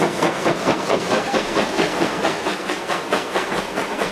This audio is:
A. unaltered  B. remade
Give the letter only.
B